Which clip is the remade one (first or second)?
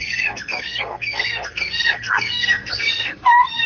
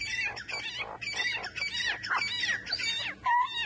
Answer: first